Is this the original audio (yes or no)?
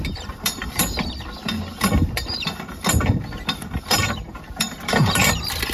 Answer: no